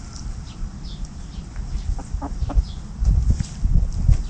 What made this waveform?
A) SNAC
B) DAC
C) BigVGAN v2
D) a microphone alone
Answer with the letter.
D